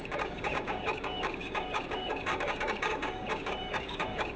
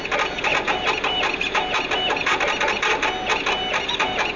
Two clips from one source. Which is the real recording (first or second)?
second